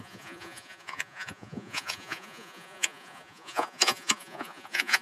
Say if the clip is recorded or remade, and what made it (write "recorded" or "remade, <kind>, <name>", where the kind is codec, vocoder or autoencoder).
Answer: remade, vocoder, Vocos